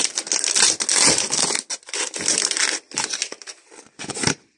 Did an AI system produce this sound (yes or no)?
no